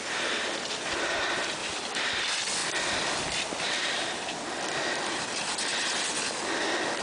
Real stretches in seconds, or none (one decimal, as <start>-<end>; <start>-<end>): 0.0-1.6; 2.1-7.0